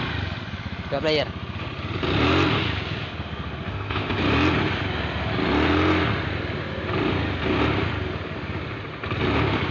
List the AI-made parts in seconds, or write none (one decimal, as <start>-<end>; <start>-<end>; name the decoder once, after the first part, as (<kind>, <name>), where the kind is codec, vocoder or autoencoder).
3.7-4.2 (codec, ZipCodec)